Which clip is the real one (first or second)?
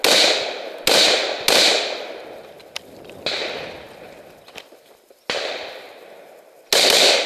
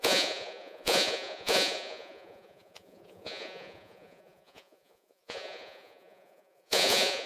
first